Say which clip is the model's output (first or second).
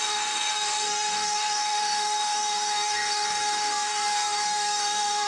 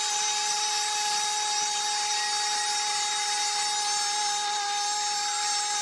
first